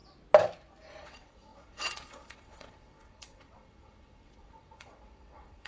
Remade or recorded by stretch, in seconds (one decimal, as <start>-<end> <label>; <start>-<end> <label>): 0.0-1.0 recorded; 1.0-5.7 remade